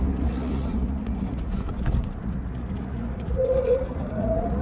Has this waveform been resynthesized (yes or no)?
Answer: yes